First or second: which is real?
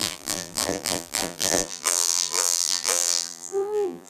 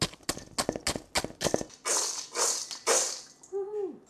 second